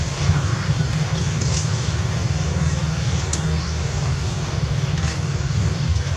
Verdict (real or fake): fake